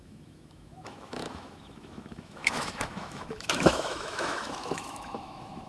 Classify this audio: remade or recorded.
remade